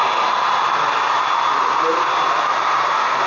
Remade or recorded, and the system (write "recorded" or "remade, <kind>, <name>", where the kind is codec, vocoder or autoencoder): recorded